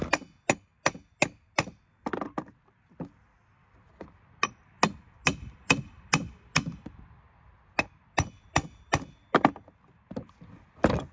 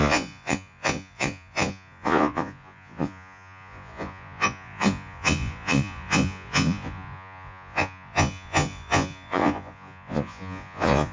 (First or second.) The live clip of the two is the first